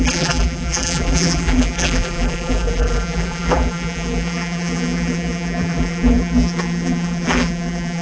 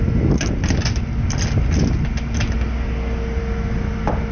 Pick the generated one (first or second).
first